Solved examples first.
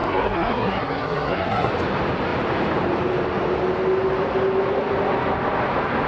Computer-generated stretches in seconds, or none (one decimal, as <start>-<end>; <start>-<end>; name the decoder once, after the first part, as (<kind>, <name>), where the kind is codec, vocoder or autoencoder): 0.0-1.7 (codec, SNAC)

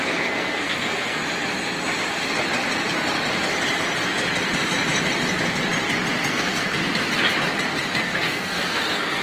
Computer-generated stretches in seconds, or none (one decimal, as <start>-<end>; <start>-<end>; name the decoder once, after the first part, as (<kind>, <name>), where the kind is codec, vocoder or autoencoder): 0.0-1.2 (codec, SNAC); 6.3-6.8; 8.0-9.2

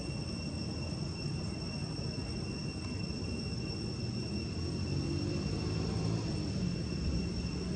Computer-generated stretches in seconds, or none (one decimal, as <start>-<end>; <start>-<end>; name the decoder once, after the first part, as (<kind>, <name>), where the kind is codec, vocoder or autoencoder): none

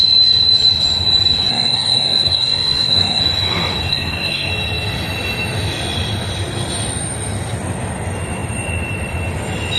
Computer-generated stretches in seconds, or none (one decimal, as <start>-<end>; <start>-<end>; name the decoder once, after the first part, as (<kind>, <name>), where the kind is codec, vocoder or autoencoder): 1.5-3.2 (codec, SNAC); 3.9-4.5

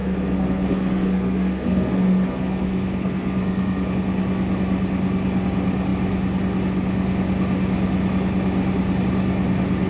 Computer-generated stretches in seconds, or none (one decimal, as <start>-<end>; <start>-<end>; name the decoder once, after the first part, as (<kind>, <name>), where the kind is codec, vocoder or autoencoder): 0.0-3.9 (codec, SNAC)